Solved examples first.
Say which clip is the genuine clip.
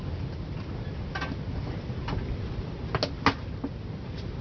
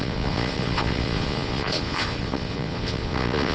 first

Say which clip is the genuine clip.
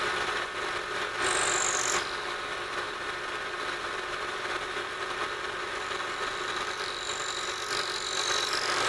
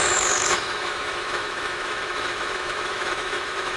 first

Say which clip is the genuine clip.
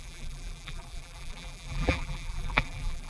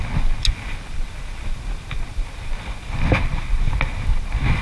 second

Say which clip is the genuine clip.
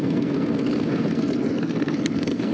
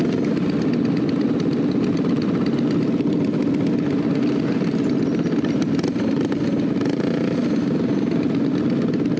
second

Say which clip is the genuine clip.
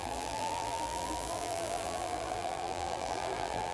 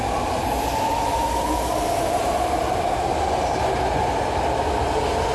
second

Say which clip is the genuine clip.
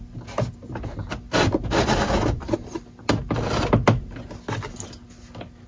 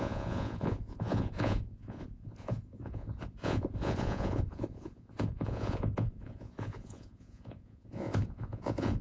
first